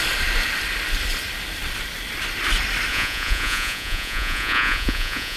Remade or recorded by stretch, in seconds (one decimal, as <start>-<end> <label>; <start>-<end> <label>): 0.0-2.9 recorded; 2.9-5.4 remade